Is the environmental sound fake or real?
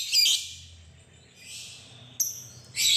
real